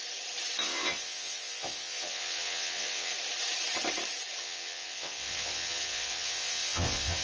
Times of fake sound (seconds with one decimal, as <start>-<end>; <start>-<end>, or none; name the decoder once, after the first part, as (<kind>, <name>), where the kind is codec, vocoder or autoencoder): 0.6-3.1 (vocoder, WaveNeXt); 4.4-7.2